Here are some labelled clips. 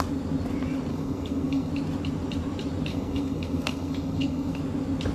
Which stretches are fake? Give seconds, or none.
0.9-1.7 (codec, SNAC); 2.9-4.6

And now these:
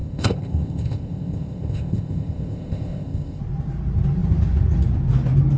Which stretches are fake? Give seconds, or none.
0.0-3.4 (codec, ZipCodec)

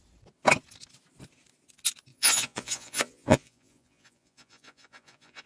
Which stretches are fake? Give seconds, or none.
2.1-5.5 (vocoder, Vocos)

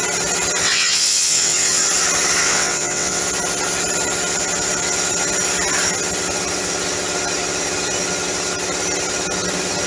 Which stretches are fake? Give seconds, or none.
0.6-1.9 (vocoder, WaveNeXt); 2.4-3.2

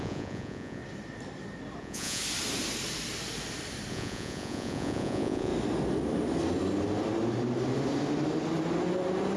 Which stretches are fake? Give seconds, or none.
0.0-0.8 (vocoder, Vocos); 1.8-2.2; 3.9-5.5